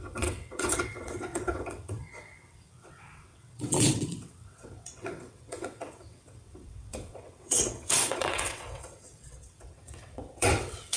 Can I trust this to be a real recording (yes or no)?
no